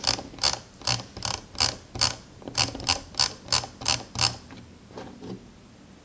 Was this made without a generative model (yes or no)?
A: yes